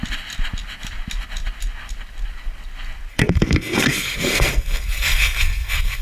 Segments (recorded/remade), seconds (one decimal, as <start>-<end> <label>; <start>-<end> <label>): 0.0-3.1 recorded; 3.1-6.0 remade